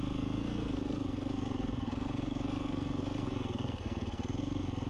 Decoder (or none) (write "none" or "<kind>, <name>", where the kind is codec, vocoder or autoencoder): codec, SNAC